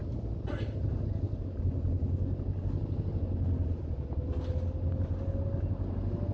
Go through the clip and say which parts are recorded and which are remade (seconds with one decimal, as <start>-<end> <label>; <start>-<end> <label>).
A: 0.0-6.3 recorded